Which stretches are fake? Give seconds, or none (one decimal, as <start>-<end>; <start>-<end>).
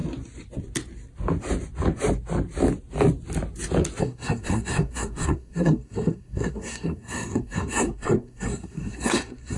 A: 4.0-9.6